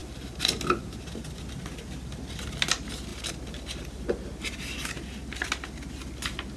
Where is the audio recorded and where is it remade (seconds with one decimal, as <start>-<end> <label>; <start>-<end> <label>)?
0.0-6.6 recorded